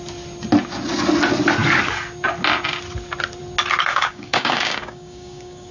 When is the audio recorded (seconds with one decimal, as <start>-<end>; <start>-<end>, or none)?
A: 0.0-3.9